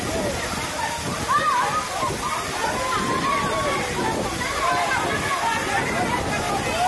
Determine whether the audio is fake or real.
real